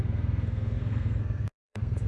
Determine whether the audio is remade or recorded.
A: remade